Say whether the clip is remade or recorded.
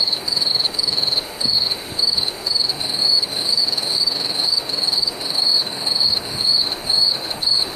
remade